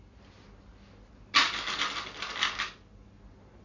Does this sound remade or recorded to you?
recorded